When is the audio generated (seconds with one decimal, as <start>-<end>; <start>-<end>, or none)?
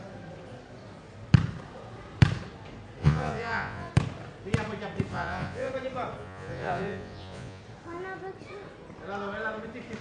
3.0-3.9; 5.1-5.7; 6.2-7.6